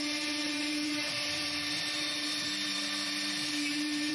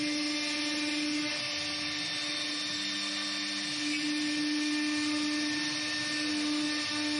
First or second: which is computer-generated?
first